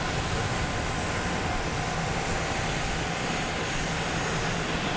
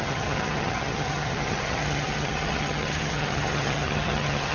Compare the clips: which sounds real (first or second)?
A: first